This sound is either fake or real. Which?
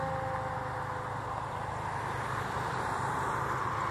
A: real